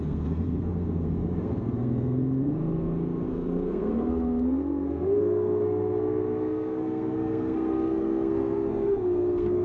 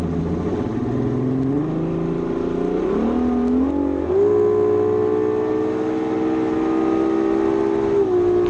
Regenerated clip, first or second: first